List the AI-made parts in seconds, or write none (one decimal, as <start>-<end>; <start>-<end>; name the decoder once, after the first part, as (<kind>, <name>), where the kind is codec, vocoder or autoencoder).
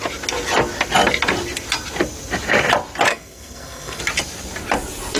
3.1-4.0 (codec, SNAC)